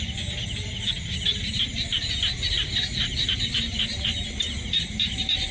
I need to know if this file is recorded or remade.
remade